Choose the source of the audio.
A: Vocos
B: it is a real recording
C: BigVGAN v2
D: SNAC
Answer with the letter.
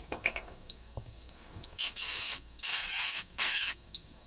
D